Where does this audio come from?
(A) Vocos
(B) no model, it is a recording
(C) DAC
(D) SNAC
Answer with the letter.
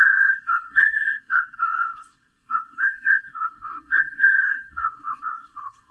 D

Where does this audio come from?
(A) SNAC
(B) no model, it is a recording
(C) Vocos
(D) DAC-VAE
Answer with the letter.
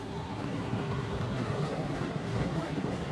A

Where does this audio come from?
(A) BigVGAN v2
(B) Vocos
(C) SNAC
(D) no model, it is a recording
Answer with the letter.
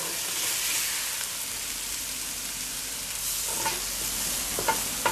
D